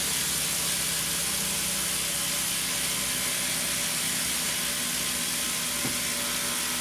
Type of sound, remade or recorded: recorded